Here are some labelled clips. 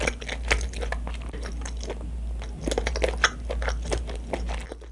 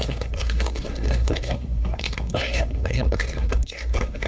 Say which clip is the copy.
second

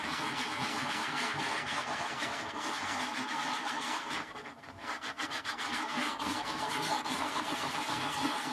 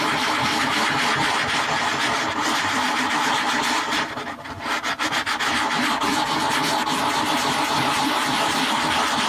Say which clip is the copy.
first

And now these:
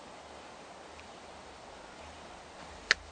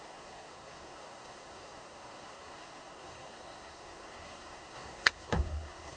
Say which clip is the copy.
second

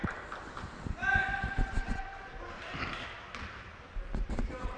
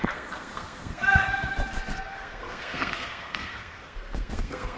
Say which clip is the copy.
second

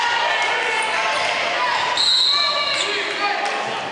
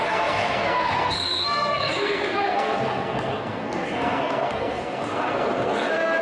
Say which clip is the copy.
second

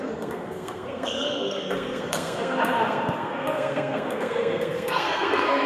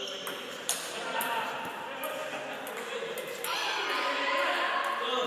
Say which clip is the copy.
first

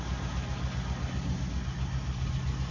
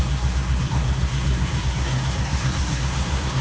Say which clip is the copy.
second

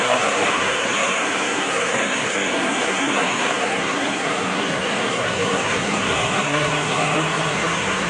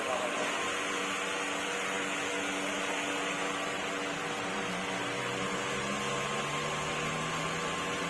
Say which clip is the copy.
first